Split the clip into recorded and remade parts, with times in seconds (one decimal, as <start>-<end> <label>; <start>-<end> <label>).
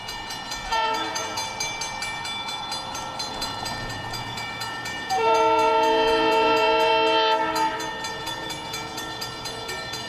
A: 0.0-1.4 remade; 1.4-3.3 recorded; 3.3-6.9 remade; 6.9-8.1 recorded; 8.1-10.1 remade